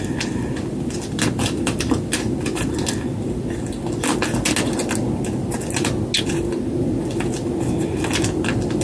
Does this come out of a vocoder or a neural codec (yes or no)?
no